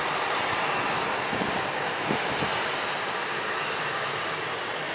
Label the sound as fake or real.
real